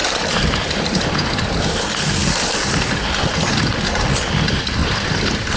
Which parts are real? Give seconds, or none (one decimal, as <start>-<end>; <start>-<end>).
1.3-2.6; 3.6-4.8